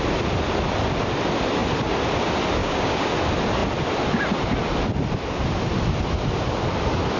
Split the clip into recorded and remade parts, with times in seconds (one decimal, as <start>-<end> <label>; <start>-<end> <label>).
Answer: 0.0-2.6 recorded; 2.6-3.1 remade; 3.1-7.2 recorded